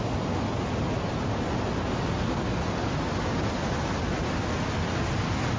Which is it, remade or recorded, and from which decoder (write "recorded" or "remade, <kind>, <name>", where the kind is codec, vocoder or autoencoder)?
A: recorded